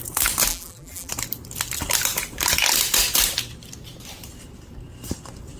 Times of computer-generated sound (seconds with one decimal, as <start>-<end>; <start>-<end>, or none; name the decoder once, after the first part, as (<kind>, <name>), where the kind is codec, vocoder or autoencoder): 0.5-1.1 (vocoder, BigVGAN v2)